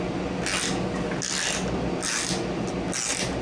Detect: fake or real real